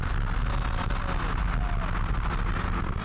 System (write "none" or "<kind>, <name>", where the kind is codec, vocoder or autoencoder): none